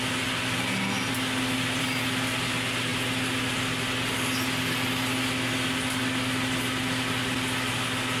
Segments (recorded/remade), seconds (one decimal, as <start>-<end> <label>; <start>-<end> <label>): 0.0-8.2 recorded